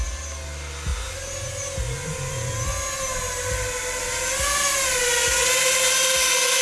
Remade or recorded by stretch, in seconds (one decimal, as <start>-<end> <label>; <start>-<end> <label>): 0.0-6.6 recorded